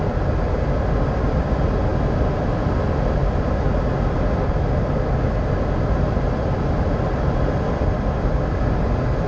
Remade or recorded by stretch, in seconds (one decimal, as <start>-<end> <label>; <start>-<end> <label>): 0.0-9.3 recorded